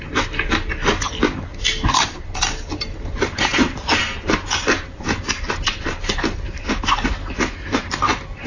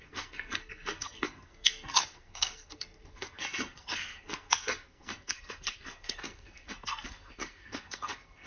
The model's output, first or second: second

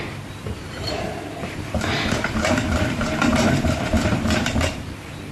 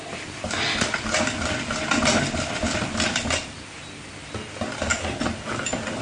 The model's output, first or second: first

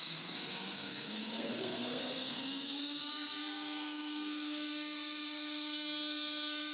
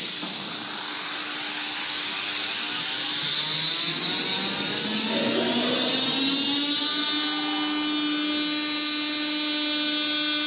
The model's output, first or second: first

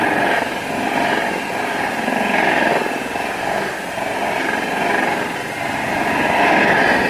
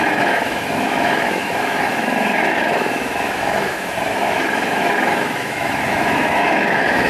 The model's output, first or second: second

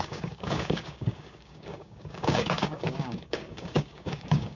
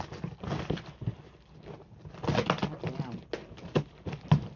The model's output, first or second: first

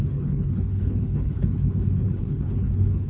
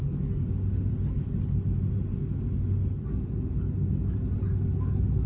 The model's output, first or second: first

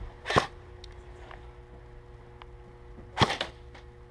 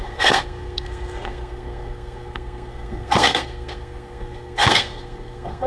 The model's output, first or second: second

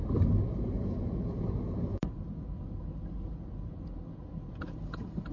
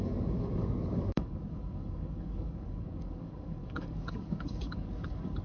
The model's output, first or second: second